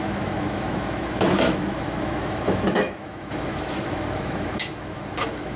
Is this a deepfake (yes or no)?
yes